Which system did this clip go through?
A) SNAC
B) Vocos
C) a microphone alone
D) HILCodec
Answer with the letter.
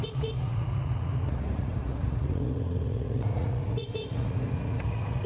B